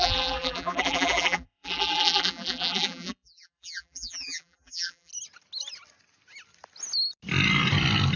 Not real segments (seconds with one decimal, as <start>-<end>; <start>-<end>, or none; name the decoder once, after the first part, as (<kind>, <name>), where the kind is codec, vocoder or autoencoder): 0.0-5.1 (vocoder, BigVGAN v2)